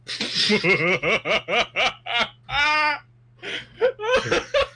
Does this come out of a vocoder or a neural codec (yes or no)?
no